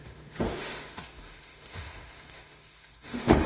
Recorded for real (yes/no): no